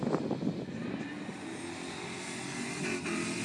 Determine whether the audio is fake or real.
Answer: real